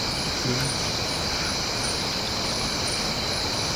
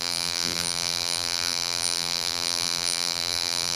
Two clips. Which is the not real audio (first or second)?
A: second